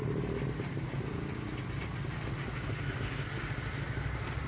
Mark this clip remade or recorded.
recorded